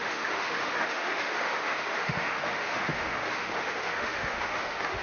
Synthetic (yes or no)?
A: yes